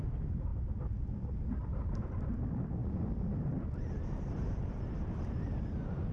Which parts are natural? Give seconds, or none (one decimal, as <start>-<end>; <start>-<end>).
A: 0.0-0.5; 2.3-6.1